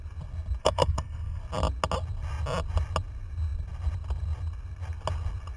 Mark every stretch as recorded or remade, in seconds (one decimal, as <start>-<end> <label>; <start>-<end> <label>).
0.0-0.6 recorded; 0.6-1.4 remade; 1.4-5.6 recorded